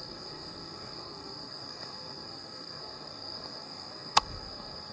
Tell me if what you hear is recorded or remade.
remade